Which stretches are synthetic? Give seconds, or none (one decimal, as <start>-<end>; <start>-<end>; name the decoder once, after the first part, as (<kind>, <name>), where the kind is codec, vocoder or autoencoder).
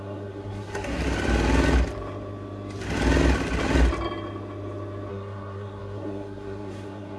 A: 0.0-1.0 (codec, SNAC); 5.1-7.2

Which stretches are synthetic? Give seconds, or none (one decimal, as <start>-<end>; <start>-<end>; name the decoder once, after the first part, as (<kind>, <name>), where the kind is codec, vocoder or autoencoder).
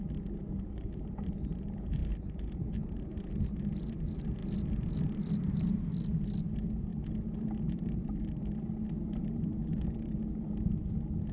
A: none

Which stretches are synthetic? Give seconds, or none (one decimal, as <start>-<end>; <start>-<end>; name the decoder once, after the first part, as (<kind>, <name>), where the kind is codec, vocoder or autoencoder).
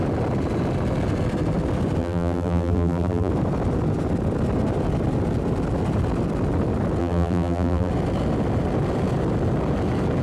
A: 2.0-3.3 (vocoder, BigVGAN v2); 7.0-7.9